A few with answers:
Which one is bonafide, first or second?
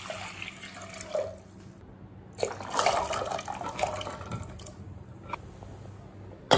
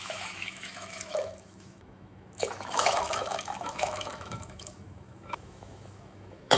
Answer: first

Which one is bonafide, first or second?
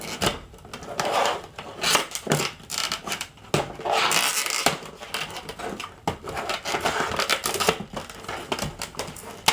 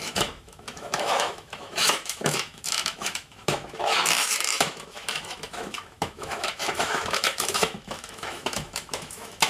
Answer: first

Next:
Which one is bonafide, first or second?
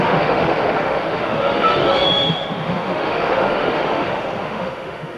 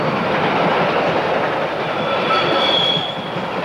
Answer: second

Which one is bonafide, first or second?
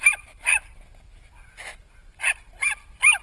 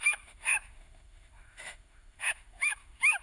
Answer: first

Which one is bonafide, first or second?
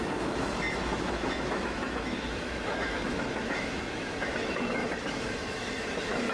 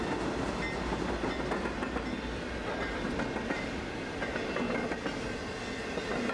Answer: second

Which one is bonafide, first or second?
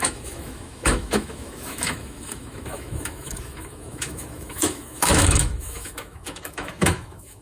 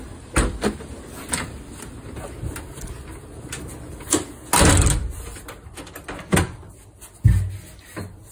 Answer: second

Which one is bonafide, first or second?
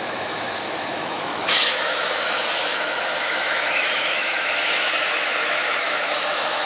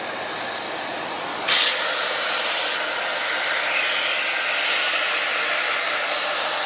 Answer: second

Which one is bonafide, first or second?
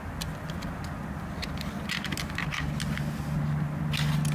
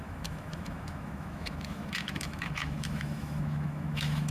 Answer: first